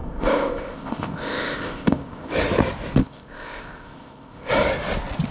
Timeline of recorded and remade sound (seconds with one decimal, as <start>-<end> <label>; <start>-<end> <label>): 0.0-2.3 remade; 2.3-3.0 recorded; 3.0-4.5 remade; 4.5-5.3 recorded